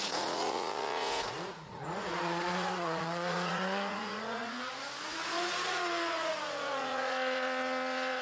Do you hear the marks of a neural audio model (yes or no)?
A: yes